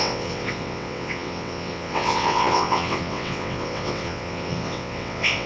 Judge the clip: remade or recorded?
remade